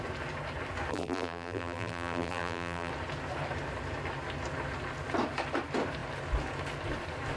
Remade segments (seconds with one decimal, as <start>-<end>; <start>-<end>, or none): 0.9-2.9

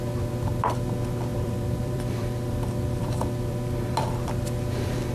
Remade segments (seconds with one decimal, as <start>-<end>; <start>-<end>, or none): 1.3-4.3

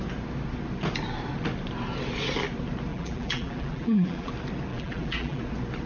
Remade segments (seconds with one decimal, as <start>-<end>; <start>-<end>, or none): 2.9-4.3; 4.7-5.4

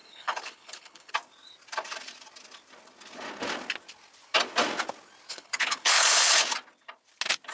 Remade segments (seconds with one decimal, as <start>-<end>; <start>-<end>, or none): 0.0-1.1; 5.3-6.3

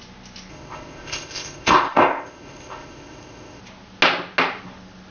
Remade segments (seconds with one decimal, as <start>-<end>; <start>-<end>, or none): 0.5-3.6